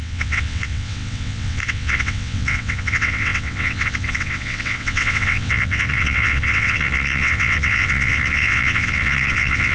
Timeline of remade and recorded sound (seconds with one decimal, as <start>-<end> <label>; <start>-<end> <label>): 0.0-9.7 remade